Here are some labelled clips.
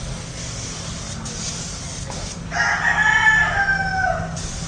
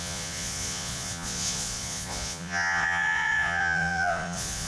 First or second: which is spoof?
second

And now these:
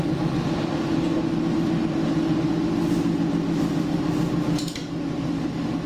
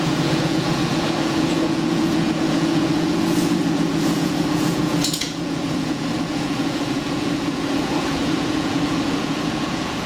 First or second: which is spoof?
second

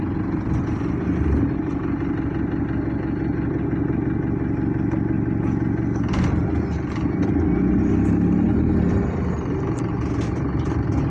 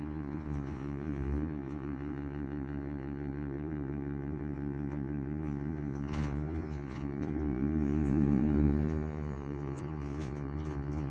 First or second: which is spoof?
second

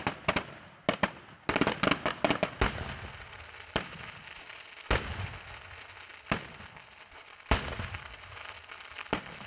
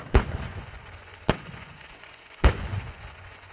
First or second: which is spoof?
second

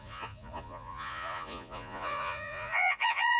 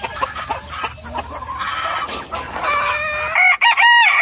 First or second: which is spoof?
first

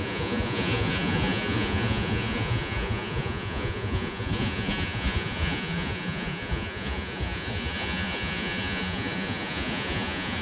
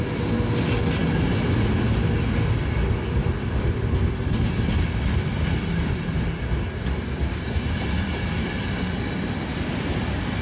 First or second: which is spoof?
first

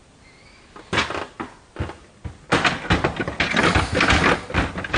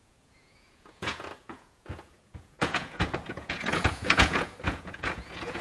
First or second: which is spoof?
second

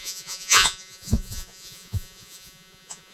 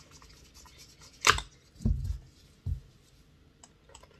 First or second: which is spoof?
first